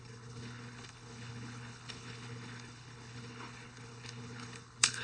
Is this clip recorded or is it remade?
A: remade